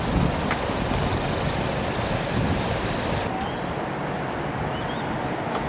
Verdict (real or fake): real